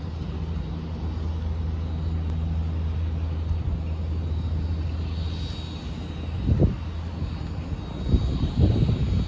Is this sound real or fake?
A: real